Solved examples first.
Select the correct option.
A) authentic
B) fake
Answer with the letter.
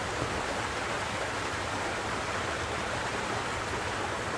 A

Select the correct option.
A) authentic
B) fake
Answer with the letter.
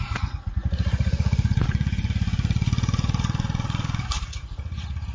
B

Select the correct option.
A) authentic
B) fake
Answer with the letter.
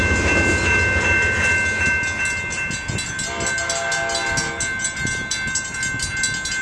A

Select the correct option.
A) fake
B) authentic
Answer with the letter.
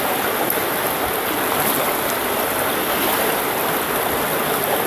B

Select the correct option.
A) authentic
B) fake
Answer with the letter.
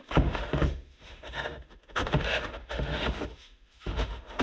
B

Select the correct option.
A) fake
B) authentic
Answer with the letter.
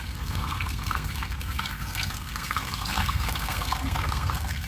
A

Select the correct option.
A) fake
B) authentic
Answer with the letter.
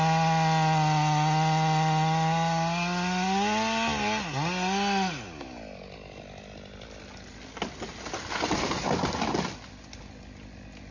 B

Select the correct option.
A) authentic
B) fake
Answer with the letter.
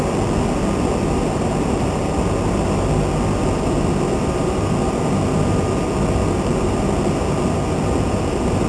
A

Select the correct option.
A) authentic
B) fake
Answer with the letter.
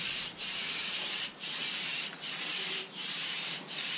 B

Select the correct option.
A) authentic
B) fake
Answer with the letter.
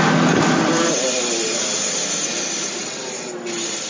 A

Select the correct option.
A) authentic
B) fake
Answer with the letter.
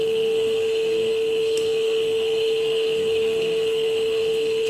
B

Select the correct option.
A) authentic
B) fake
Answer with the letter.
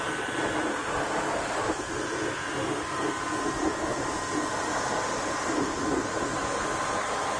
A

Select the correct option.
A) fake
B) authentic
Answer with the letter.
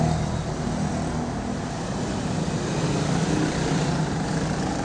B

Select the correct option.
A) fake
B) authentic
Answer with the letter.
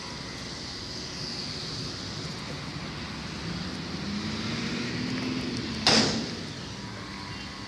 B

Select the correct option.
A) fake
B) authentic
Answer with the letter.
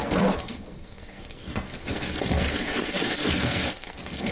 A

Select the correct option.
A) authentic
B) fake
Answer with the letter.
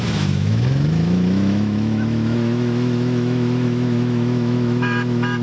B